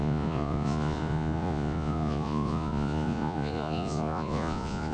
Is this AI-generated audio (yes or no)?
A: yes